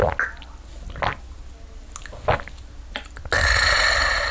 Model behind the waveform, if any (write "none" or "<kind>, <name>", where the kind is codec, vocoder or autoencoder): none